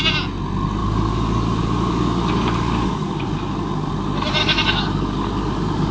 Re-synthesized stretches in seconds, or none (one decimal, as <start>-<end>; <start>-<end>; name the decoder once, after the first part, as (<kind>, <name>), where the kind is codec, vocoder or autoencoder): 0.8-3.9 (codec, DAC); 4.4-5.9

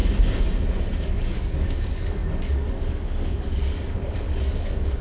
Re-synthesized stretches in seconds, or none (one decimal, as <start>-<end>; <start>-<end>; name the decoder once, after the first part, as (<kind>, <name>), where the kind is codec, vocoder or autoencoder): 1.0-5.0 (codec, DAC)